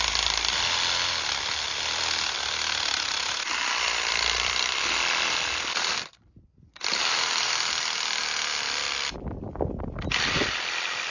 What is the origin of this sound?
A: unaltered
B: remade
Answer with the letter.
B